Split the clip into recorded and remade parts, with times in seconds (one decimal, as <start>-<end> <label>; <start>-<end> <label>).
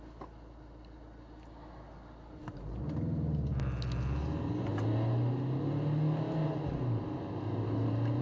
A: 0.0-8.2 recorded